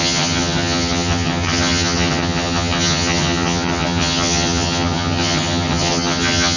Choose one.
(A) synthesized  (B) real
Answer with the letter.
A